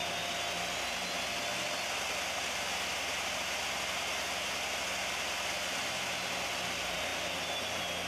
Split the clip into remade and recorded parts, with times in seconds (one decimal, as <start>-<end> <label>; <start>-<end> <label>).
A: 0.0-8.1 recorded